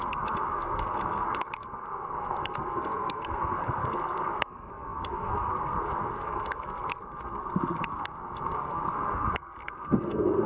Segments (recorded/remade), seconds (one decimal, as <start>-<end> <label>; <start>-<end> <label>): 0.0-10.5 remade